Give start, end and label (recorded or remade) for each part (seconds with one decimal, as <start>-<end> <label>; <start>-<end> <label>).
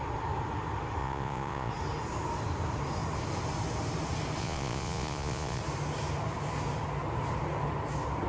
0.0-1.0 recorded; 1.0-1.7 remade; 1.7-4.4 recorded; 4.4-5.6 remade; 5.6-8.3 recorded